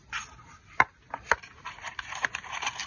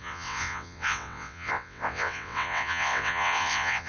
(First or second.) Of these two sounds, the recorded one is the first